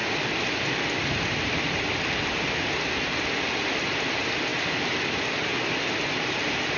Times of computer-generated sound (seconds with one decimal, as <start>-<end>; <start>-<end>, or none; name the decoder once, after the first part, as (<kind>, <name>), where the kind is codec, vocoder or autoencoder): none